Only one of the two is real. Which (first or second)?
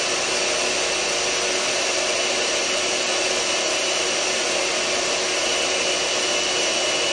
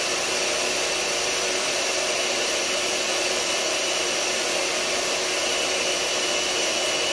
first